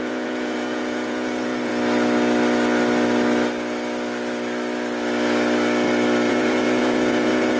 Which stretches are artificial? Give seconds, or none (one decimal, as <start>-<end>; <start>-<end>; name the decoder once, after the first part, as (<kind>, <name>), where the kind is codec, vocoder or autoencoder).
0.0-1.7 (vocoder, Vocos); 6.3-7.6